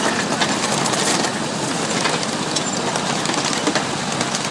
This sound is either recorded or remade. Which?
recorded